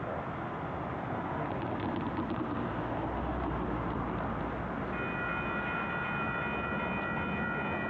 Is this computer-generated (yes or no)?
no